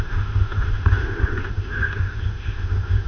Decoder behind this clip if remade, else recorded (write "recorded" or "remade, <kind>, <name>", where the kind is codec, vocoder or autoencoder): remade, autoencoder, DAC-VAE